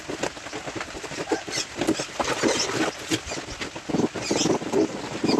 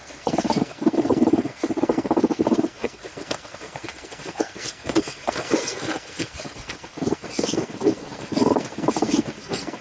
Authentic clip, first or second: first